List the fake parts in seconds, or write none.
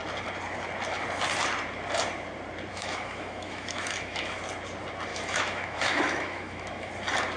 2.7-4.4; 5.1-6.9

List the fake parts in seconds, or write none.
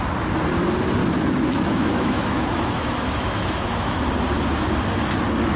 1.0-4.1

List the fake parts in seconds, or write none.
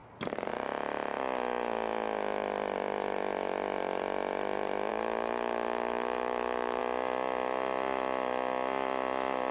4.9-6.8